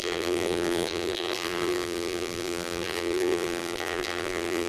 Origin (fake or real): fake